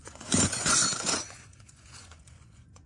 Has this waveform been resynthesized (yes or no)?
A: yes